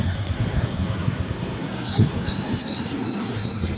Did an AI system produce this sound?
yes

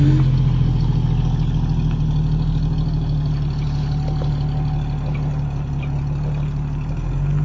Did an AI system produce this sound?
no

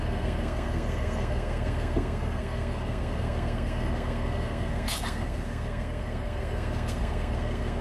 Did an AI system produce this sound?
yes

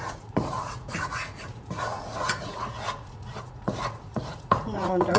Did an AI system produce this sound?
yes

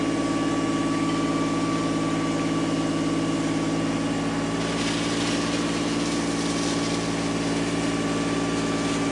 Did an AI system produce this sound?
no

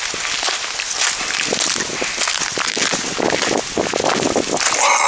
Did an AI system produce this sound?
no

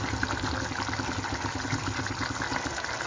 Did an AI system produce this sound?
no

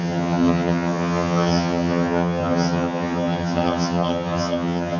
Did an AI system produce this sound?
yes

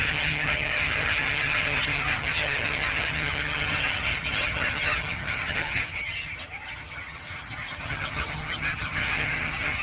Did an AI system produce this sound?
yes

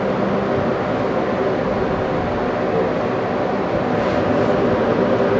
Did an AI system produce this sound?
no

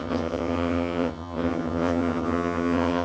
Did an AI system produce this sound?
yes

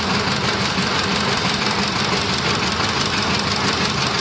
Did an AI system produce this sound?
no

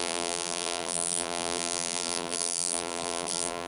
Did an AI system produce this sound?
yes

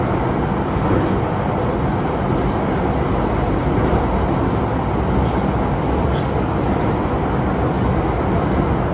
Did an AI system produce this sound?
no